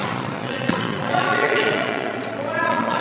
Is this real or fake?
fake